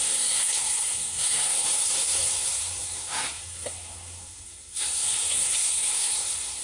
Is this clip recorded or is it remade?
remade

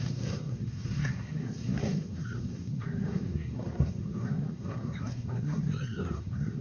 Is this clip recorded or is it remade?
remade